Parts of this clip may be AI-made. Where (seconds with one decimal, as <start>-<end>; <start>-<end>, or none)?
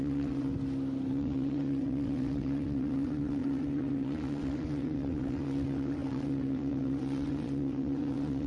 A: 0.0-0.5; 1.1-8.5